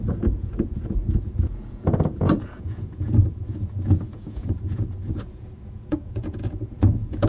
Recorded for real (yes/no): no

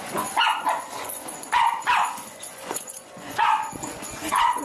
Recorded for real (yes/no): no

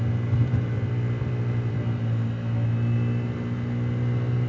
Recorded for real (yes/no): yes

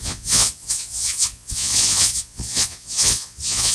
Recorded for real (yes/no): no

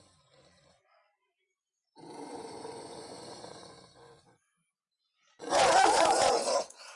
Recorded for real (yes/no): no